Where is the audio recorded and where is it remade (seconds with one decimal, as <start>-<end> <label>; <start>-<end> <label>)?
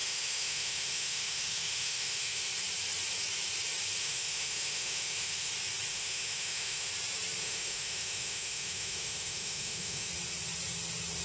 0.0-2.5 remade; 2.5-4.0 recorded; 4.0-5.5 remade; 5.5-5.9 recorded; 5.9-6.9 remade; 6.9-7.4 recorded; 7.4-10.1 remade; 10.1-11.2 recorded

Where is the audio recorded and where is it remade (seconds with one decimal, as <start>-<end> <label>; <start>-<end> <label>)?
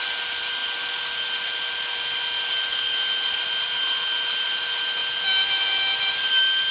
0.0-6.7 recorded